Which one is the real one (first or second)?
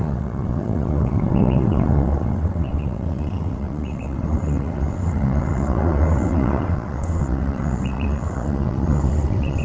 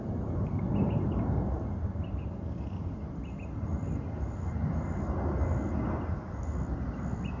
second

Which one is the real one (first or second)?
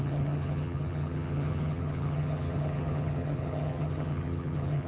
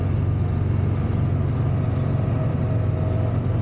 second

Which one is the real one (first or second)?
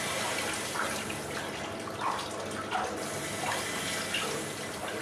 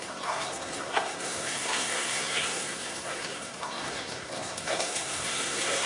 first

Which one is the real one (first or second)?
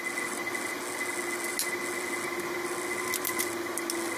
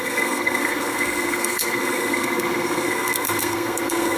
first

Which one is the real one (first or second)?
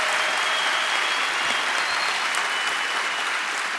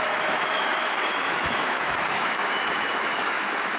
first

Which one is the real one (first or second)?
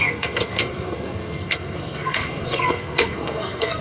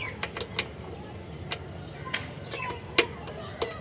second